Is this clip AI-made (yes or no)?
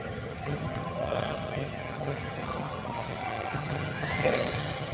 yes